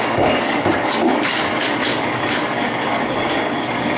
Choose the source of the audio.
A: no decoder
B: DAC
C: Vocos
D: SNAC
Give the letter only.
B